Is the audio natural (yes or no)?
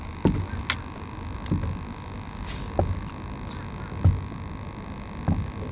yes